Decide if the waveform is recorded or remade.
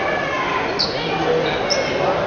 recorded